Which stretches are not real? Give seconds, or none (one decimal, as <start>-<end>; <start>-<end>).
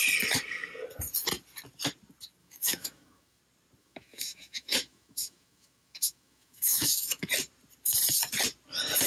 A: 2.4-3.4; 3.8-7.3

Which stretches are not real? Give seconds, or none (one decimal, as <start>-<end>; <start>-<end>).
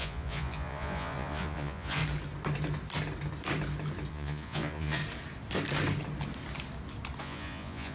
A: 0.0-2.0; 4.1-5.0; 7.2-7.9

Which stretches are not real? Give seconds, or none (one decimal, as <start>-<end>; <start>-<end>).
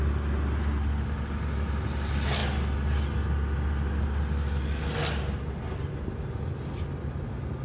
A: none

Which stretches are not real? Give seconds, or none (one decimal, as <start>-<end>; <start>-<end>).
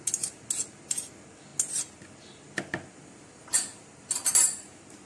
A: none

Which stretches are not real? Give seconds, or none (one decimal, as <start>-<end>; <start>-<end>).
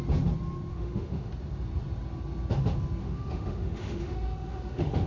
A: 0.7-1.3; 3.0-5.1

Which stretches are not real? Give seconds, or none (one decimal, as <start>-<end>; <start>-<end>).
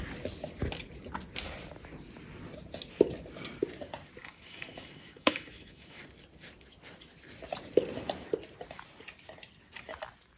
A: 4.2-6.0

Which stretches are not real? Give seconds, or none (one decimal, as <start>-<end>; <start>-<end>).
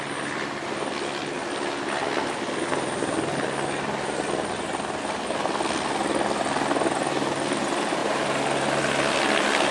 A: none